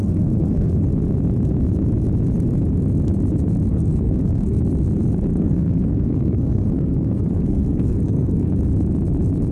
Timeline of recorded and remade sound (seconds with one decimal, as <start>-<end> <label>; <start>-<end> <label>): 0.0-0.7 remade; 0.7-3.7 recorded; 3.7-4.6 remade; 4.6-5.3 recorded; 5.3-8.5 remade; 8.5-9.5 recorded

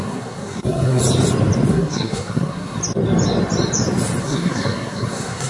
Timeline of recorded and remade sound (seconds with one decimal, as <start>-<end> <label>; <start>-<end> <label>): 0.0-1.0 remade; 1.0-1.7 recorded; 1.7-2.8 remade; 2.8-4.2 recorded; 4.2-5.5 remade

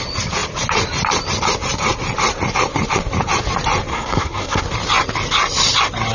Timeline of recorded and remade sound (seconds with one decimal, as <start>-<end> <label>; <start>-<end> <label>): 0.0-3.9 recorded; 3.9-4.6 remade; 4.6-6.1 recorded

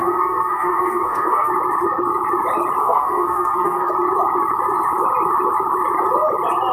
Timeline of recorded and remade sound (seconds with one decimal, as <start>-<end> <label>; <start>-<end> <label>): 0.0-1.5 remade; 1.5-2.8 recorded; 2.8-3.9 remade; 3.9-6.7 recorded

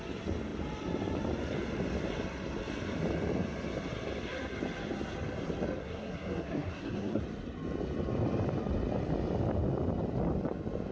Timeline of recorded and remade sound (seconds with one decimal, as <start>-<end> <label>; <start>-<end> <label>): 0.0-5.8 recorded; 5.8-7.2 remade; 7.2-10.9 recorded

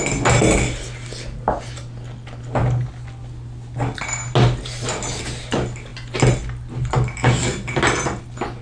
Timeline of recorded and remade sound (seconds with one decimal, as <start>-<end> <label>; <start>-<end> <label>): 0.0-8.6 recorded

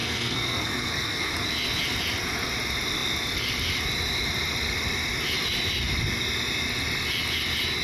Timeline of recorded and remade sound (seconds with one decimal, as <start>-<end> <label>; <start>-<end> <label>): 0.0-1.3 remade; 1.3-7.8 recorded